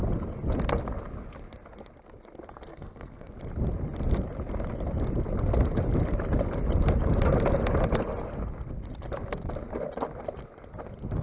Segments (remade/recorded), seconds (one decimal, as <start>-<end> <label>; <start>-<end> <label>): 0.0-2.7 recorded; 2.7-3.3 remade; 3.3-11.2 recorded